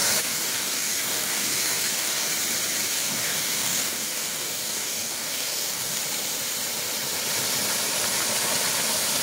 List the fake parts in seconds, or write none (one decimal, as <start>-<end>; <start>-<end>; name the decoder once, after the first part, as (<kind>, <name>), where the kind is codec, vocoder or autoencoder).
0.0-2.3 (codec, DAC); 2.8-6.0